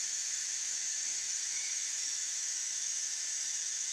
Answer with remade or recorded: remade